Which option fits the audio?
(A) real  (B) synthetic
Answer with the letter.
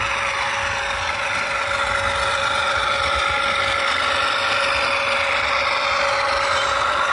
A